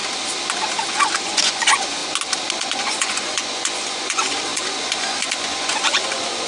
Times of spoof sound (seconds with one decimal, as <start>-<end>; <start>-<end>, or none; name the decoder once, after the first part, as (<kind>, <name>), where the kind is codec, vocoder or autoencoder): 0.9-2.0 (vocoder, Vocos); 2.5-6.5